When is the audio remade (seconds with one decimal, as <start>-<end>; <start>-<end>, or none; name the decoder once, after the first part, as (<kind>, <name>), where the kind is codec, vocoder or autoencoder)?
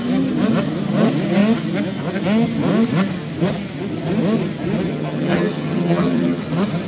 4.9-6.4 (vocoder, HiFi-GAN)